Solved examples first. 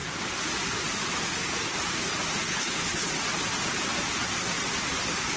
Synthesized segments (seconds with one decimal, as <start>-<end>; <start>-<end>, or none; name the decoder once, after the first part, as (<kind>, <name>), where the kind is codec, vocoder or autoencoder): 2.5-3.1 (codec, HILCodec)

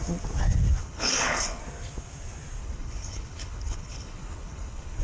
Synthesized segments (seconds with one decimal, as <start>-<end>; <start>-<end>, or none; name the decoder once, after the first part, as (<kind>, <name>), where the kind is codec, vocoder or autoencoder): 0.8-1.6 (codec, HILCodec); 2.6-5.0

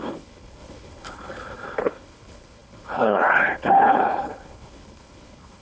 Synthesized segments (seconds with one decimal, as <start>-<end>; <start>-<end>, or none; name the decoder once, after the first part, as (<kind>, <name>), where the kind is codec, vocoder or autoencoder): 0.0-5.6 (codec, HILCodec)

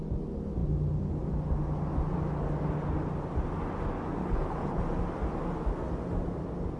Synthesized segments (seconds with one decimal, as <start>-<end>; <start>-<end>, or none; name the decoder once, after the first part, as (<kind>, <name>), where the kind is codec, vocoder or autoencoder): 4.2-4.8 (codec, HILCodec)

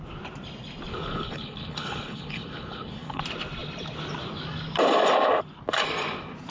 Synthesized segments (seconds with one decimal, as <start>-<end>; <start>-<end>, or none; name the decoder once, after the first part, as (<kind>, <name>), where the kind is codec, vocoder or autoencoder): 0.9-3.2 (codec, HILCodec)

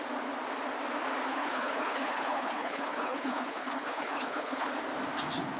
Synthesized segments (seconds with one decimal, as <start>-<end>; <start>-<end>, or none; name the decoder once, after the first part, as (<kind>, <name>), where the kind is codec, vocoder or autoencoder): 1.3-4.7 (codec, HILCodec)

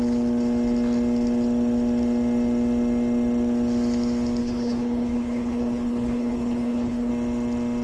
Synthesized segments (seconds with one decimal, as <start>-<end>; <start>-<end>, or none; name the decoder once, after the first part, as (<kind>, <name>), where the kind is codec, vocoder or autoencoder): 4.4-7.1 (codec, HILCodec)

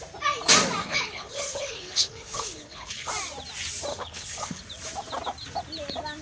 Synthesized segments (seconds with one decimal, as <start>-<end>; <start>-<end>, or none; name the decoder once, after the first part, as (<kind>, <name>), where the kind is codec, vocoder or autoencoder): 0.8-3.1 (codec, HILCodec); 3.9-4.6